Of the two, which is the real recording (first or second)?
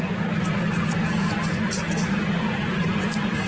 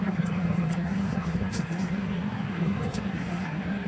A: first